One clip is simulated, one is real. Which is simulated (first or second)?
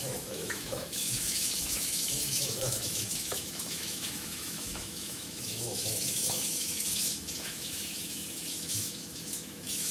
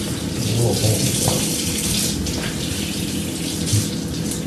first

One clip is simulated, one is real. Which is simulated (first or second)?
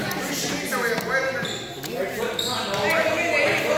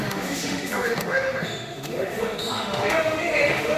second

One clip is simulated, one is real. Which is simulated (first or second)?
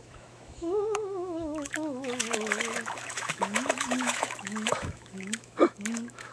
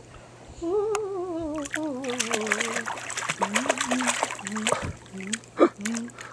first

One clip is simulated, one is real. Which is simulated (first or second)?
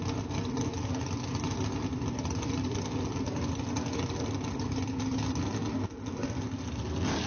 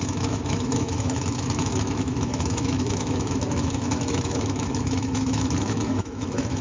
second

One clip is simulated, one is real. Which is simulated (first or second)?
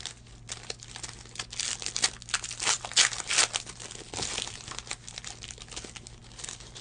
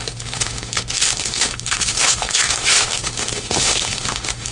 second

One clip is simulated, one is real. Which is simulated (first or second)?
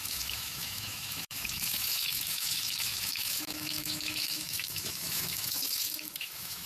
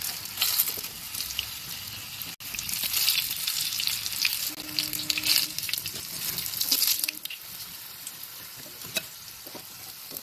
first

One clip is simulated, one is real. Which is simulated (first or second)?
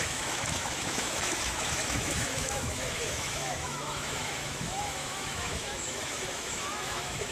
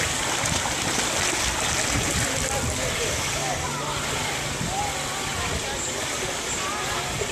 first